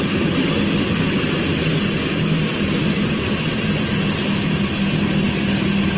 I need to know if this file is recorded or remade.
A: recorded